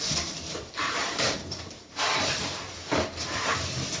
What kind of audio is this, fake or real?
fake